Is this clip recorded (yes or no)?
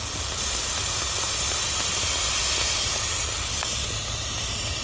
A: yes